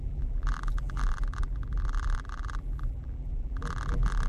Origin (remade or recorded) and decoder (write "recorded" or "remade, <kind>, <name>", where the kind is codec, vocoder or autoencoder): remade, vocoder, BigVGAN v2